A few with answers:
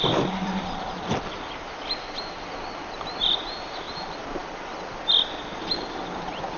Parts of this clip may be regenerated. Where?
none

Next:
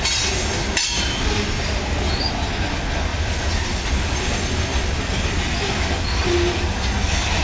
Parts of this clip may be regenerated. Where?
3.1-3.7 (vocoder, BigVGAN v2)

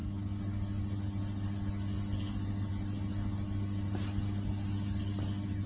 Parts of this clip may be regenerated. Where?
none

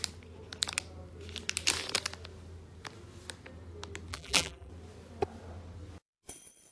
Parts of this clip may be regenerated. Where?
4.1-4.7 (vocoder, BigVGAN v2)

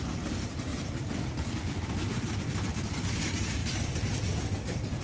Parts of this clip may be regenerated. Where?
0.7-2.4 (vocoder, BigVGAN v2)

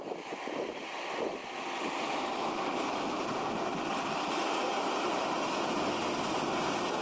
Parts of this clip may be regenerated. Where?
1.4-5.3 (vocoder, BigVGAN v2)

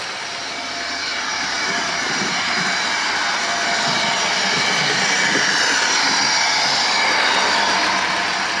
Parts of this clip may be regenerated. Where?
1.1-3.1 (vocoder, BigVGAN v2)

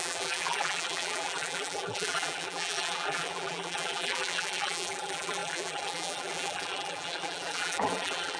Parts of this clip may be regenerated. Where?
0.0-8.4 (vocoder, BigVGAN v2)